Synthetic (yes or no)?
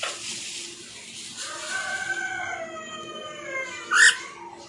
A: no